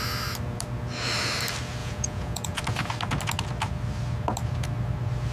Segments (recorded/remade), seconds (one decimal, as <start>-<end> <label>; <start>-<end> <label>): 0.0-1.8 recorded; 1.8-2.6 remade; 2.6-5.3 recorded